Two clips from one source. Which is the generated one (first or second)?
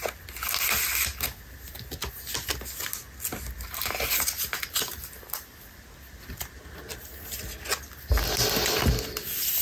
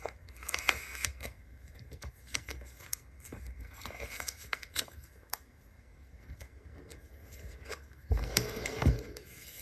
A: second